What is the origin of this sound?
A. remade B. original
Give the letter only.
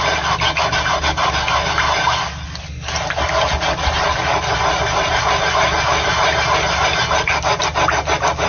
B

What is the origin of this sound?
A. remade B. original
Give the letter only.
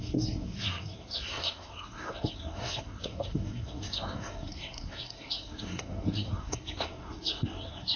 A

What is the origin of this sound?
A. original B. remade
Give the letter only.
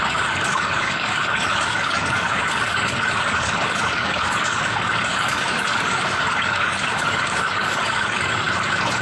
B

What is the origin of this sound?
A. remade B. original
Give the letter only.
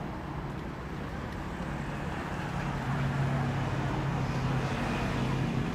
B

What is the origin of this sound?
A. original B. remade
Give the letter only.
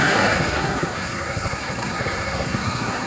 B